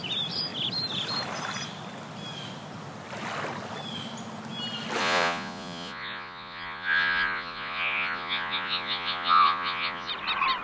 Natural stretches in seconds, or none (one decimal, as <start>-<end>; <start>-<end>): 0.0-5.0; 10.1-10.6